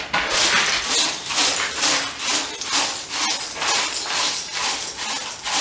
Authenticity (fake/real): real